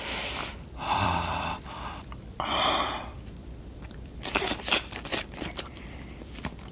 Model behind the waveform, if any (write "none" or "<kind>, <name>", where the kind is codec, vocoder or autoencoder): vocoder, BigVGAN v2